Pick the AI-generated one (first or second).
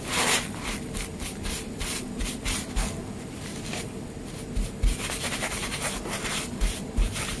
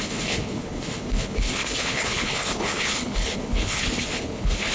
second